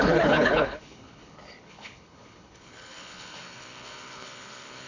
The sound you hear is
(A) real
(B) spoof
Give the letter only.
B